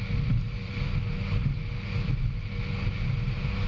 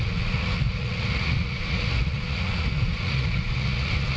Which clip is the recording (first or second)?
first